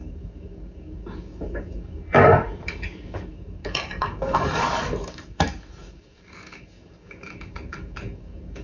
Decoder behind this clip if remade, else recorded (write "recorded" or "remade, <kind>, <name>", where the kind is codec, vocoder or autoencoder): remade, codec, DAC